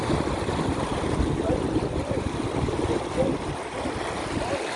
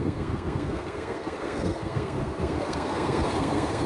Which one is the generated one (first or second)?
second